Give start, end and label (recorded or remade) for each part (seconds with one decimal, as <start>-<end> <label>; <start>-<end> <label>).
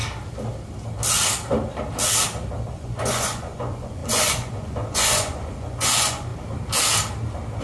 0.0-2.7 recorded; 2.7-6.3 remade; 6.3-7.6 recorded